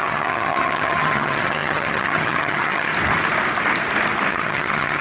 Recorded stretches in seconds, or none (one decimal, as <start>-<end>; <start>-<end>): 2.9-4.3

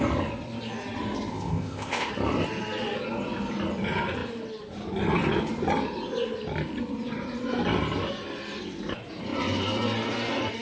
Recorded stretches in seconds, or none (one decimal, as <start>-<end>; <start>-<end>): 0.0-1.3; 2.1-10.6

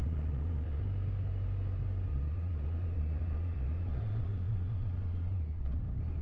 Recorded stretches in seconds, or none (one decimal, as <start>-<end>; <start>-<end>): 0.8-2.1; 5.8-6.2

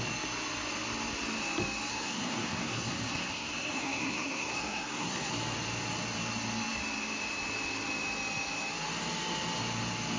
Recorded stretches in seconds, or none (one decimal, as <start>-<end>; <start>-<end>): 0.0-1.9; 5.3-10.2

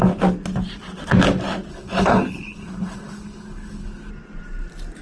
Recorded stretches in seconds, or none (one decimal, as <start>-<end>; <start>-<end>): 0.0-1.7; 4.1-5.0

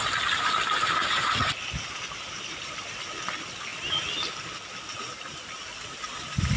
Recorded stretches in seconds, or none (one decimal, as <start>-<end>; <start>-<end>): 0.0-1.0; 1.5-6.6